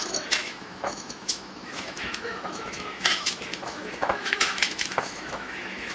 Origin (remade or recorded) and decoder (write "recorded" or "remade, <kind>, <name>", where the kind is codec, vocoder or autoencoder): remade, autoencoder, DAC-VAE